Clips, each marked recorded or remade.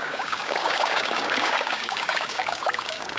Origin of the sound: remade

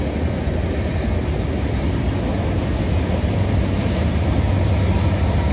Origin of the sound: recorded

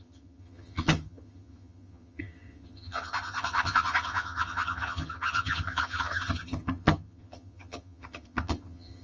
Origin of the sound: remade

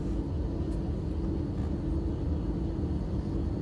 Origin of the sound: recorded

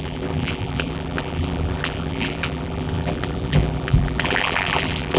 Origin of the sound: remade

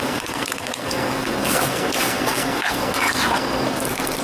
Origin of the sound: remade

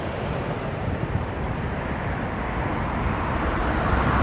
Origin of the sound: remade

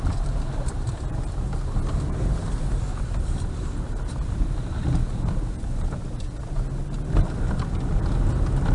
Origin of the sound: recorded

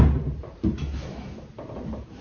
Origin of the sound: recorded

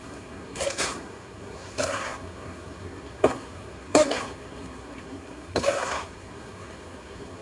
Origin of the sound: remade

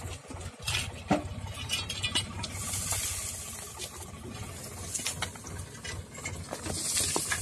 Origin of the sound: recorded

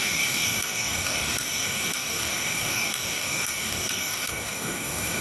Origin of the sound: remade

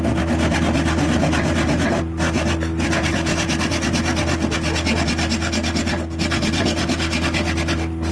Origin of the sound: recorded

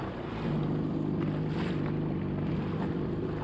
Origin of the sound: recorded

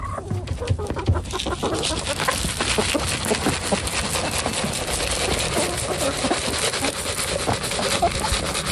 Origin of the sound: recorded